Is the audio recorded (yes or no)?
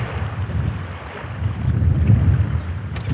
yes